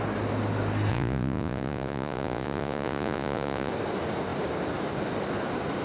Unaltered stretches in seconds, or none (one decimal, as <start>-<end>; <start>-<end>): 0.0-0.9; 3.7-5.8